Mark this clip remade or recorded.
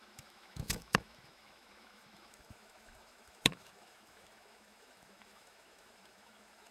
remade